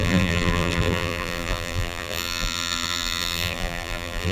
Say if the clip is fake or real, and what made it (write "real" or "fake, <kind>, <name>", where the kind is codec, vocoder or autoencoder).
fake, vocoder, BigVGAN v2